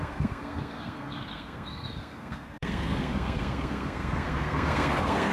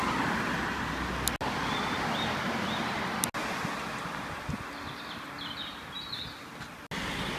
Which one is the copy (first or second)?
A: first